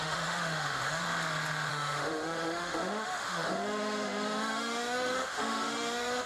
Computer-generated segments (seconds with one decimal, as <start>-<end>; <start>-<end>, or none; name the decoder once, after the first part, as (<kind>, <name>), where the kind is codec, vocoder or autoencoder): 0.0-1.0 (autoencoder, DAC-VAE); 1.7-6.3